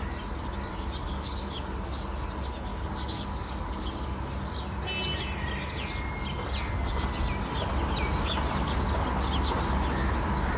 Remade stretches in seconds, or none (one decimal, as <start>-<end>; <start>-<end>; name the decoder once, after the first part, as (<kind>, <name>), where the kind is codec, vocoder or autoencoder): 1.0-1.9 (codec, DAC); 2.7-4.2